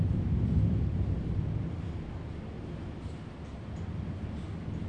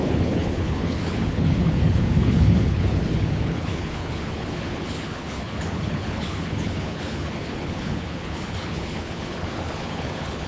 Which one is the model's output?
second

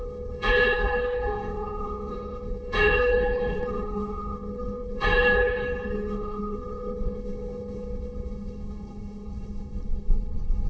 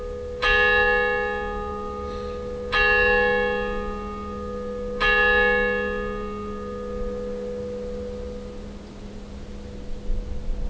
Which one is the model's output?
first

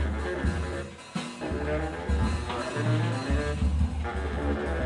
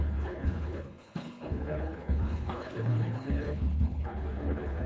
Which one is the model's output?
second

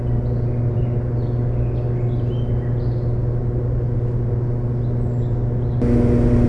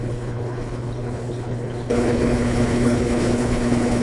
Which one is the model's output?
second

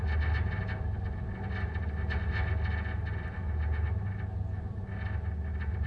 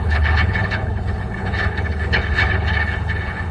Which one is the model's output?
second